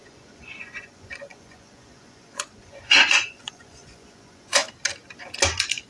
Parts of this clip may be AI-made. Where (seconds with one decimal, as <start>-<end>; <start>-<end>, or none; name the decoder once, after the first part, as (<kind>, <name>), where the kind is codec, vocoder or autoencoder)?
0.0-4.6 (vocoder, Vocos)